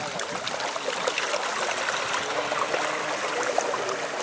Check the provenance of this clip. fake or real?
real